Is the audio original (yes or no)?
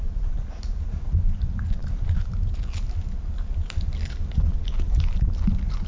yes